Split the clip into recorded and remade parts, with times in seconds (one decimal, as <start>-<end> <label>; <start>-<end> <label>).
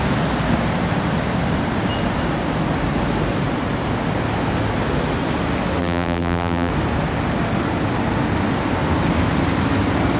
0.0-5.8 recorded; 5.8-6.7 remade; 6.7-10.2 recorded